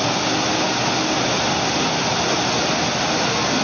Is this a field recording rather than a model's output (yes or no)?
yes